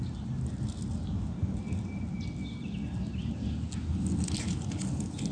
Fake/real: real